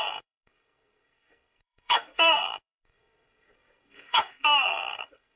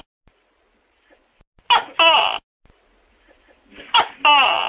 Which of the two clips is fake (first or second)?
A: first